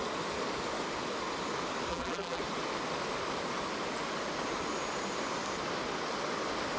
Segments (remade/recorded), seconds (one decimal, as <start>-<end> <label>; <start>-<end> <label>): 0.0-1.9 recorded; 1.9-2.4 remade; 2.4-6.8 recorded